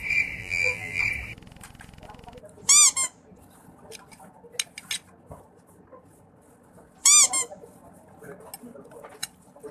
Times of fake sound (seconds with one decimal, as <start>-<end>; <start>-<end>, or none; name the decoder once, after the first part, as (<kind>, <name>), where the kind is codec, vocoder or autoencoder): 0.4-1.0 (vocoder, BigVGAN v2)